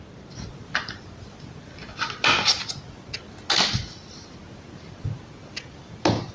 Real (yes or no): yes